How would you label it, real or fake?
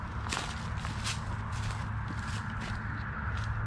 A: real